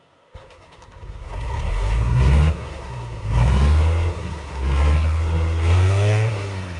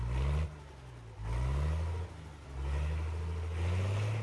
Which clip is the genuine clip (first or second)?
second